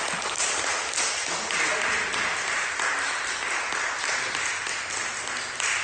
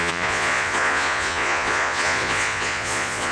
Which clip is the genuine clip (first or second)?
first